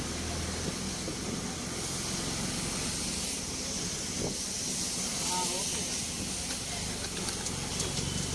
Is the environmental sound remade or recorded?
recorded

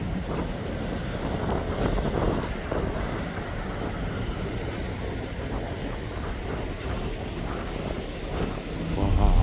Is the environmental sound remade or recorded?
recorded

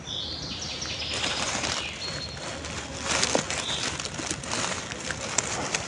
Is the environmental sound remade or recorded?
recorded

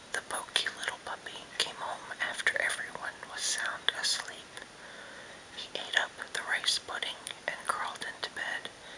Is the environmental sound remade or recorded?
recorded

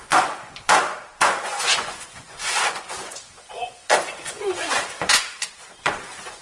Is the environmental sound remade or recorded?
remade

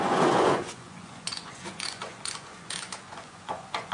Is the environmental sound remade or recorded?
remade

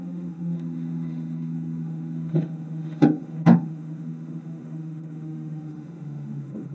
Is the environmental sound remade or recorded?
remade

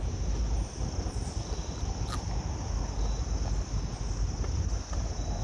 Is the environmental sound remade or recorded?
recorded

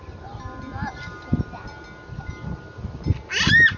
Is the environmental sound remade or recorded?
recorded